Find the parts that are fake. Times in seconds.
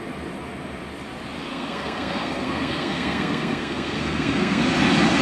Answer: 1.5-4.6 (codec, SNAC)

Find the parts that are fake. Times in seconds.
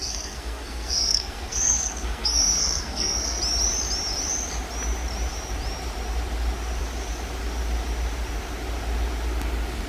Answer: 0.0-3.4 (codec, SNAC)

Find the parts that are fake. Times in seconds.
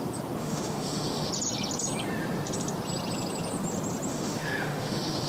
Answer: 0.4-1.3 (autoencoder, DAC-VAE); 4.1-5.3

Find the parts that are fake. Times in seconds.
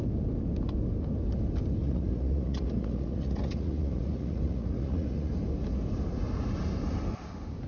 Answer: 1.8-5.3 (vocoder, Vocos)